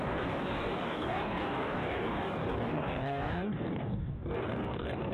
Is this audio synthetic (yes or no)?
yes